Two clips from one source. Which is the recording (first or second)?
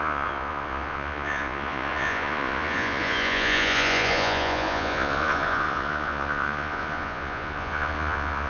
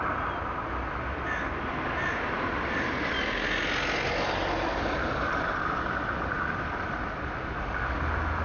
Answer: second